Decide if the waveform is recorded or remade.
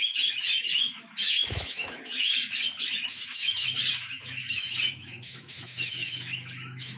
remade